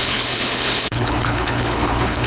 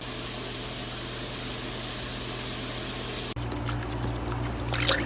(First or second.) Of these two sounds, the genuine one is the second